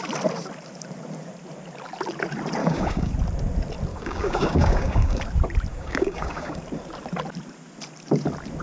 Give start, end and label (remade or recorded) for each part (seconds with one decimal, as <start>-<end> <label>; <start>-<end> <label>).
0.0-2.6 recorded; 2.6-3.1 remade; 3.1-3.9 recorded; 3.9-5.2 remade; 5.2-5.7 recorded; 5.7-6.6 remade; 6.6-8.6 recorded